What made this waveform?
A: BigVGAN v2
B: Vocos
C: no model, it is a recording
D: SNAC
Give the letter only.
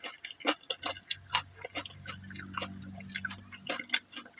C